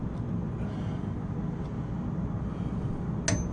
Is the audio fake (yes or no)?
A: no